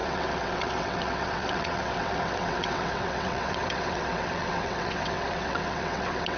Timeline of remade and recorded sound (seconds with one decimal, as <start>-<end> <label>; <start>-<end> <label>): 0.0-6.4 remade

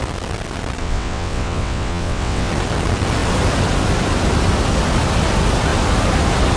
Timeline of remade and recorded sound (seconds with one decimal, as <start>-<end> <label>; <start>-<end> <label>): 0.0-0.8 recorded; 0.8-2.5 remade; 2.5-6.6 recorded

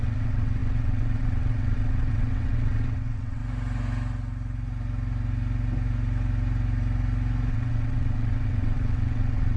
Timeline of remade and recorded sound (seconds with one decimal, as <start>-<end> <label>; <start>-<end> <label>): 0.0-3.4 remade; 3.4-7.5 recorded; 7.5-9.6 remade